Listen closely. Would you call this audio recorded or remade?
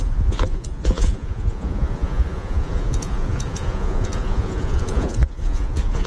remade